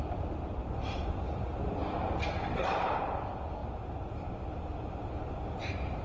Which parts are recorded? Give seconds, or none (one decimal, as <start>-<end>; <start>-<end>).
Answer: 0.0-2.0; 3.2-3.6; 5.4-6.0